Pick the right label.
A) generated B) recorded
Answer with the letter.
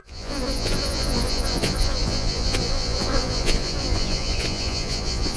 A